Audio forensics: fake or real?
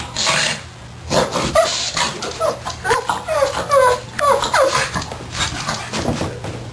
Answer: real